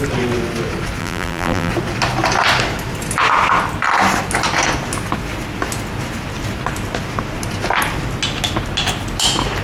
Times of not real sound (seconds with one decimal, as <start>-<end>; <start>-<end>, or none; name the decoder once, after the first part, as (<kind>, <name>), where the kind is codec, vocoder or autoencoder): 1.0-1.7 (vocoder, BigVGAN v2)

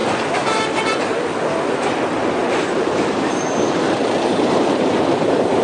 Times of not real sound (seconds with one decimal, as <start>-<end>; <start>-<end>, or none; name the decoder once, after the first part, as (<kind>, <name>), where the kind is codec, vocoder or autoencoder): 2.4-5.6 (vocoder, BigVGAN v2)

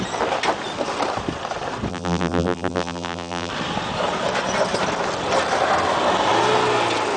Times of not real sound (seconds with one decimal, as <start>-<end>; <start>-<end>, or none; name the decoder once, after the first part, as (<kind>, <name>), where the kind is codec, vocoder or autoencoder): 1.9-3.5 (vocoder, BigVGAN v2)

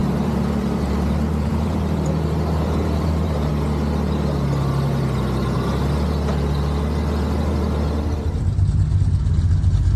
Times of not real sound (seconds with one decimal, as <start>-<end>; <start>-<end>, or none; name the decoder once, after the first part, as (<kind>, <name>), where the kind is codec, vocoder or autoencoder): 0.0-3.5 (vocoder, BigVGAN v2)

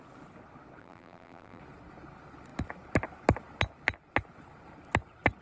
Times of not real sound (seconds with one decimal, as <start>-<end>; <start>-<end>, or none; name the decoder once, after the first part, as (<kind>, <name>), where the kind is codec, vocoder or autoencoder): 0.8-1.6 (vocoder, BigVGAN v2)